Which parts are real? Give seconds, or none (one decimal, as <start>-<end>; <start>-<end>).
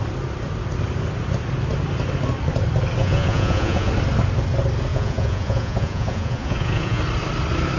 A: 0.0-3.0; 3.9-4.9; 7.0-7.8